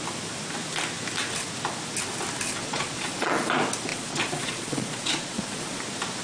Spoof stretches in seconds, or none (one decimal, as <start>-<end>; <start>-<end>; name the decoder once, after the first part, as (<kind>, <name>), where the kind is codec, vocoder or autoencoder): 2.6-3.5 (vocoder, Vocos); 3.9-5.8